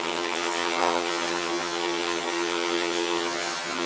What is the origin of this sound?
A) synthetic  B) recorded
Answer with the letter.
A